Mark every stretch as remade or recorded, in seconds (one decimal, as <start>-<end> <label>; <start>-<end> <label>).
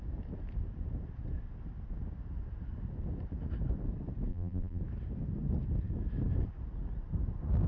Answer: 0.0-4.3 recorded; 4.3-4.8 remade; 4.8-7.7 recorded